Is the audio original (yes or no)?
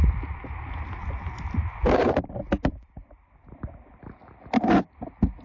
yes